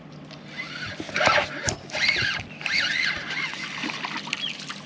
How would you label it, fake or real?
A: real